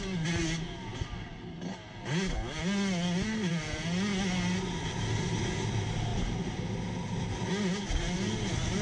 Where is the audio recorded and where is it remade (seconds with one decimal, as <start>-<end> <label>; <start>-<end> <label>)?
0.0-8.8 recorded